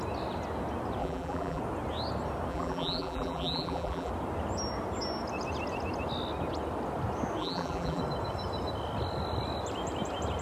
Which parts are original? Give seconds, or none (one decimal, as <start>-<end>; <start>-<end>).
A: 0.0-1.0; 1.6-2.5; 4.1-7.4; 8.0-10.4